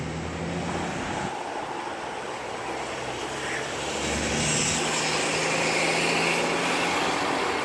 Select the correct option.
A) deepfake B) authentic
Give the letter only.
B